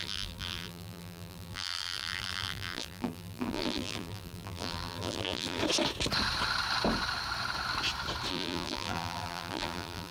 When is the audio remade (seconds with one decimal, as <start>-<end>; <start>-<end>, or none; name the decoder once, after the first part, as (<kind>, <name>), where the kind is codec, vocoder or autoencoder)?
0.0-5.6 (vocoder, BigVGAN v2); 8.3-10.1